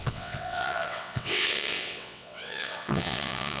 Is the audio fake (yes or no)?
yes